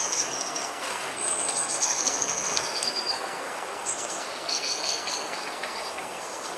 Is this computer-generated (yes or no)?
yes